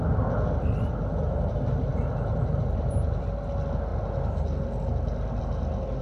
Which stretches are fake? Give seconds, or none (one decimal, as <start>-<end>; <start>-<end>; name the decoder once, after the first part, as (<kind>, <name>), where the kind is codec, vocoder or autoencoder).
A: none